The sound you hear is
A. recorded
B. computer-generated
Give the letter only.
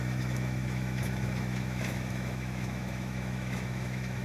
B